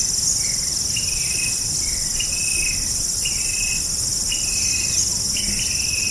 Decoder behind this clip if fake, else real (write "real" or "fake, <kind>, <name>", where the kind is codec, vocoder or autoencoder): real